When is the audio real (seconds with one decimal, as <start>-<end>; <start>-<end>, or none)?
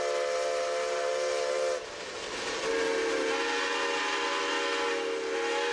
0.0-5.7